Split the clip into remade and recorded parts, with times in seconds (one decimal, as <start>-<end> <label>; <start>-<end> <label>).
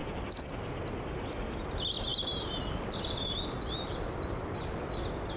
0.0-0.5 remade; 0.5-2.1 recorded; 2.1-5.0 remade; 5.0-5.4 recorded